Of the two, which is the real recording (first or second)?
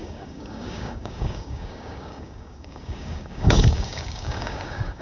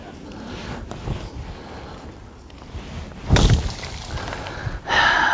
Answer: second